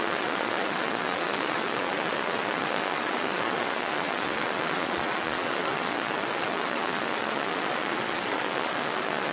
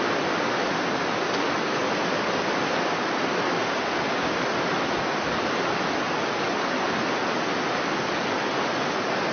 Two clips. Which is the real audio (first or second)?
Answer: second